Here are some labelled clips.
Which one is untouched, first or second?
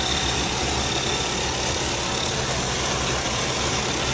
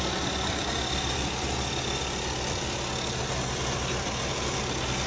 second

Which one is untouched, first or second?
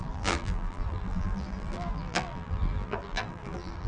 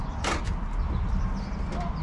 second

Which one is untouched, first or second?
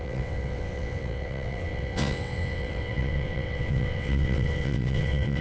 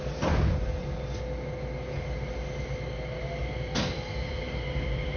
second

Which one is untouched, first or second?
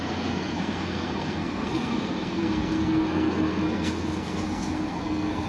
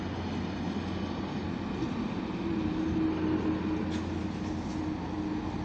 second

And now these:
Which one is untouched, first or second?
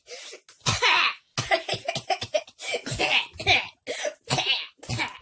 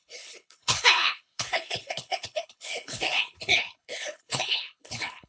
first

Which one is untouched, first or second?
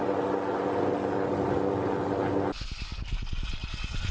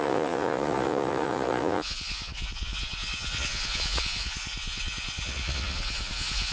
first